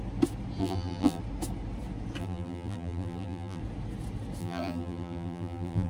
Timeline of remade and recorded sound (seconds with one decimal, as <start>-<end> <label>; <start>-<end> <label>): 0.0-0.6 recorded; 0.6-1.2 remade; 1.2-2.2 recorded; 2.2-3.6 remade; 3.6-4.4 recorded; 4.4-5.9 remade